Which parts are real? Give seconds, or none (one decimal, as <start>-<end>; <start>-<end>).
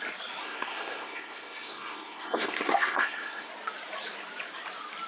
0.0-0.4; 3.5-5.1